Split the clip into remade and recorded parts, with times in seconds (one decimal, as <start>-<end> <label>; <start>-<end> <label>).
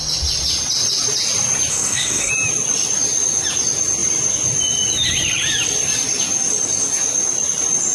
0.0-1.7 recorded; 1.7-2.3 remade; 2.3-7.9 recorded